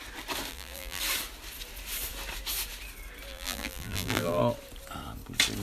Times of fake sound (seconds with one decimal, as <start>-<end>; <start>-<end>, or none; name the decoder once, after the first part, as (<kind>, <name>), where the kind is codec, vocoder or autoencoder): 0.5-1.0 (vocoder, BigVGAN v2); 3.3-4.4